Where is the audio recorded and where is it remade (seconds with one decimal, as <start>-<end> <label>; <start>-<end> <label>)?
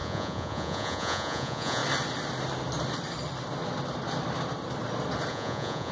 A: 0.0-1.8 remade; 1.8-5.3 recorded; 5.3-5.9 remade